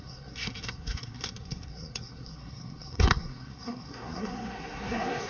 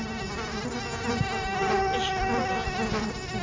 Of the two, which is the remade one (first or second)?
first